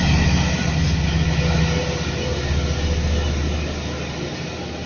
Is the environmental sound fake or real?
real